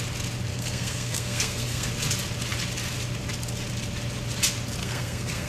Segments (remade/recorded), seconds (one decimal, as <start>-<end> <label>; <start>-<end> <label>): 0.0-0.5 recorded; 0.5-1.9 remade; 1.9-4.8 recorded; 4.8-5.5 remade